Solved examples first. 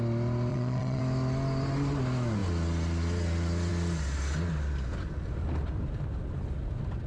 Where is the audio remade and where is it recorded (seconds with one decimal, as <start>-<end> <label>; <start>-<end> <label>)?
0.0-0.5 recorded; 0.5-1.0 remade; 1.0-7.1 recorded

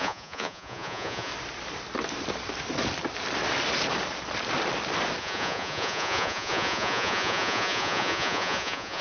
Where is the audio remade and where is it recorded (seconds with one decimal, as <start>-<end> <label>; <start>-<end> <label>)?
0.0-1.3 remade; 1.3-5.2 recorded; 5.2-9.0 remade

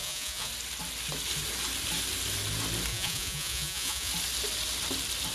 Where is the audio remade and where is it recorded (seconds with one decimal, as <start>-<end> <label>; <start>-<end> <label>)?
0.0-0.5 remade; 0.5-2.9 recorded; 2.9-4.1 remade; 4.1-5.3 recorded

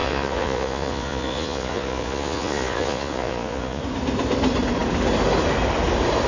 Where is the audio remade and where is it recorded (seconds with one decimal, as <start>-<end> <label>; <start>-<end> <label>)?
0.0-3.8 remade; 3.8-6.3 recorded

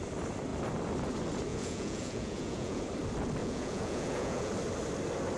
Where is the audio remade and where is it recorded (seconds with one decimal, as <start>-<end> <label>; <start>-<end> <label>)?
0.0-1.5 recorded; 1.5-2.8 remade; 2.8-3.4 recorded; 3.4-4.5 remade; 4.5-5.4 recorded